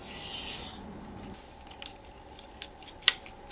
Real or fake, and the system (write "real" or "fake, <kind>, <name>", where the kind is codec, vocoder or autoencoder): real